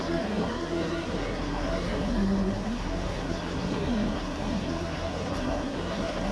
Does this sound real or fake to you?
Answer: fake